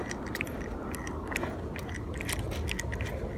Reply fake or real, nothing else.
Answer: real